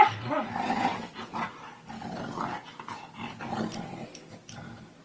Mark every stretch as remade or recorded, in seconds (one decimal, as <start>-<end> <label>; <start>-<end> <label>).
0.0-0.9 recorded; 0.9-1.5 remade; 1.5-5.0 recorded